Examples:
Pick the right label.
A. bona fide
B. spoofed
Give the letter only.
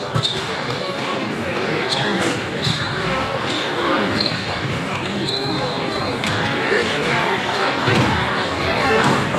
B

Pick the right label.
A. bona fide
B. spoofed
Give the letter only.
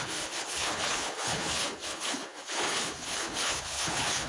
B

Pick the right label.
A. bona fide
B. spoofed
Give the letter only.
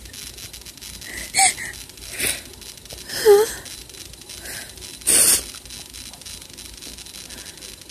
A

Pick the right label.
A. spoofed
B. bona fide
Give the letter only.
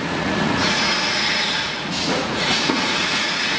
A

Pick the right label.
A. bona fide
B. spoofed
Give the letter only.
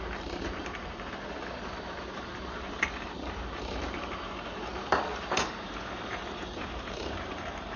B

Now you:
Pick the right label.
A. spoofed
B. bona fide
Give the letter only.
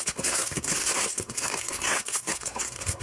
A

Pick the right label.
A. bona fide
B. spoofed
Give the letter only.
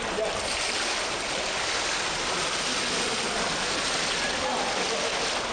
A